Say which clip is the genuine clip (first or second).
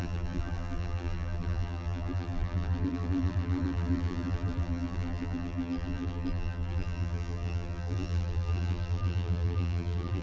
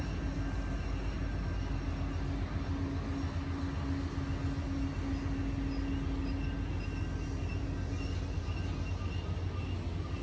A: second